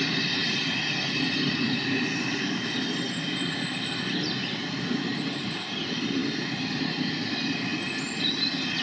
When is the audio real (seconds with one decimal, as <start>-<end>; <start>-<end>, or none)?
4.6-5.1; 6.2-7.3